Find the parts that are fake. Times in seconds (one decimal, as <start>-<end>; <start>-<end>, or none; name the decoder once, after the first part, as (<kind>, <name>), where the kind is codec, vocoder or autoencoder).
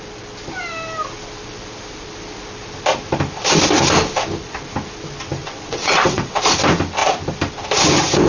5.4-6.4 (vocoder, WaveNeXt)